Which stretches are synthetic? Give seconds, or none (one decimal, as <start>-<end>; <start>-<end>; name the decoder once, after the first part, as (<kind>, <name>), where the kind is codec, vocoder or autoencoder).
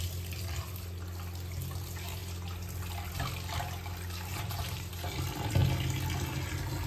4.3-4.9 (vocoder, BigVGAN v2)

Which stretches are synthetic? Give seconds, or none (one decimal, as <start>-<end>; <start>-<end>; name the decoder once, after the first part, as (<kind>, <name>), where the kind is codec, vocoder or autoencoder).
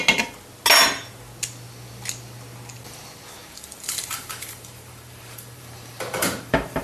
3.4-6.8 (vocoder, BigVGAN v2)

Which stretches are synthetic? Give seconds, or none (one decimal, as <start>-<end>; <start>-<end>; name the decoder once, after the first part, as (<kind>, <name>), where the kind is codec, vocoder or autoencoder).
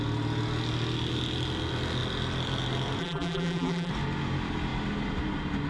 3.0-3.9 (vocoder, BigVGAN v2)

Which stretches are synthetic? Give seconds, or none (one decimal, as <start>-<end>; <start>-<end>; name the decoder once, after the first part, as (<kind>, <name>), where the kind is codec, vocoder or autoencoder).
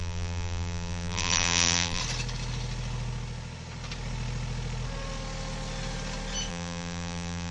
0.0-2.0 (vocoder, BigVGAN v2); 6.5-7.5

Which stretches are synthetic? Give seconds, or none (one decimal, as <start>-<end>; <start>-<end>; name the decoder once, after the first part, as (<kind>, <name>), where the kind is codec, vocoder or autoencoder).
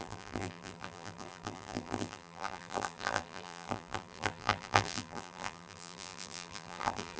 0.0-7.2 (vocoder, BigVGAN v2)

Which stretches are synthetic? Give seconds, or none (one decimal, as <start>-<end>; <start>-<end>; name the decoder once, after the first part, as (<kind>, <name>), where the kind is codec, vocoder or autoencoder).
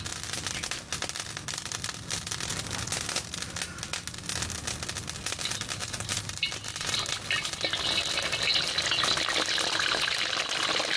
5.8-6.9 (vocoder, BigVGAN v2)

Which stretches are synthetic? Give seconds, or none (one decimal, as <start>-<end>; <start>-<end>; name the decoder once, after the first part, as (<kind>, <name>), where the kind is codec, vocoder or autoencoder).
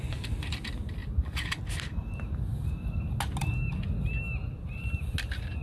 1.0-1.6 (vocoder, BigVGAN v2)